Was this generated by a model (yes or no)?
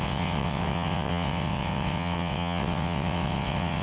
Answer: yes